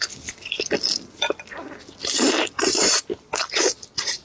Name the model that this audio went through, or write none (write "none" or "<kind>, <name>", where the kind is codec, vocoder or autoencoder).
none